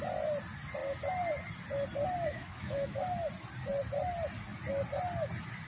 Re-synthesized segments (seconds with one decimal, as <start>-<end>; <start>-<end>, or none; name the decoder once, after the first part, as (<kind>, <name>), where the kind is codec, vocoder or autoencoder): 2.3-3.0 (autoencoder, DAC-VAE)